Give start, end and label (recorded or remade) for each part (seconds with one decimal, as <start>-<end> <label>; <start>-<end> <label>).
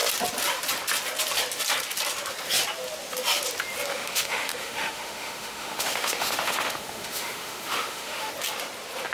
0.0-3.9 recorded; 3.9-8.3 remade; 8.3-9.1 recorded